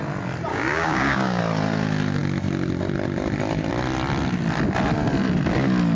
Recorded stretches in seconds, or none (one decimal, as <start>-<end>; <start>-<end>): 0.0-0.5; 1.4-6.0